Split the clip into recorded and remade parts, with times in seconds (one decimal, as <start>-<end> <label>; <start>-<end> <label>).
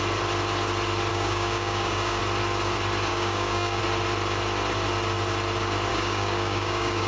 0.0-1.1 recorded; 1.1-2.2 remade; 2.2-3.1 recorded; 3.1-3.8 remade; 3.8-5.9 recorded; 5.9-7.1 remade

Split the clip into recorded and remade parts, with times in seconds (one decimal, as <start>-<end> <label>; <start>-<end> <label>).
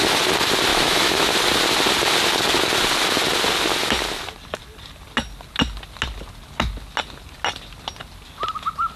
0.0-0.7 recorded; 0.7-1.3 remade; 1.3-9.0 recorded